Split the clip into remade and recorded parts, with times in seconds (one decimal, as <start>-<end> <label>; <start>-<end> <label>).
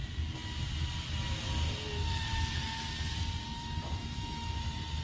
0.0-4.0 recorded; 4.0-4.6 remade; 4.6-5.0 recorded